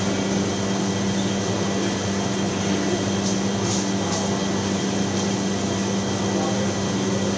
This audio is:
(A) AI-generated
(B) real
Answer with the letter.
B